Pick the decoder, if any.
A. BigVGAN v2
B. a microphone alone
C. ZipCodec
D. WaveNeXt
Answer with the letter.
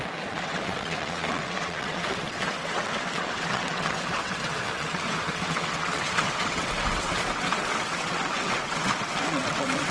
D